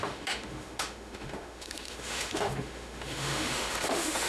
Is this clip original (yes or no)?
no